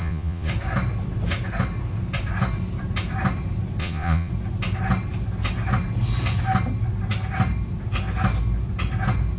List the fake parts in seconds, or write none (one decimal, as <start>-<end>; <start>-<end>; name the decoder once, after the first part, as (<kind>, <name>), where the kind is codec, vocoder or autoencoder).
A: 0.0-0.5 (vocoder, Vocos); 3.8-4.3